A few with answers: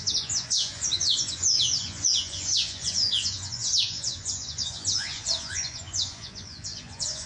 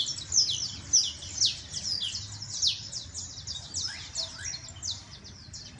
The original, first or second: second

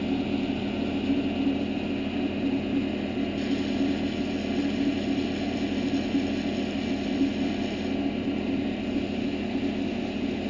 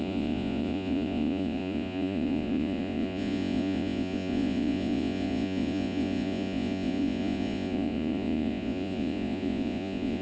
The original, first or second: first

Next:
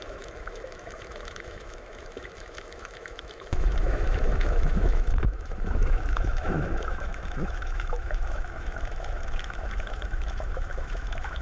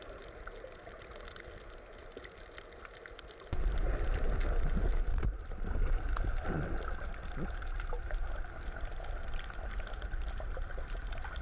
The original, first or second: second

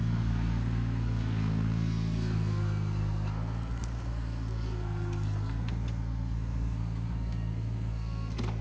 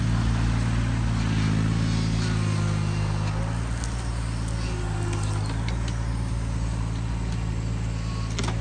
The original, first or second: second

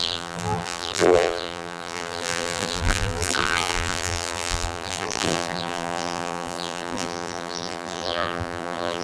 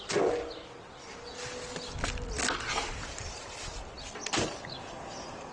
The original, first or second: second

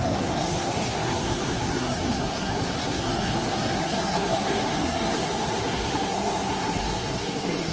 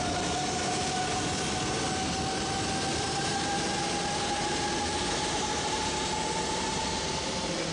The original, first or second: second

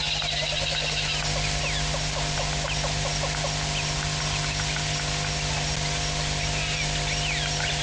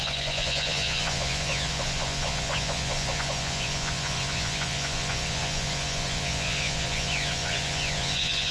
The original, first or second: first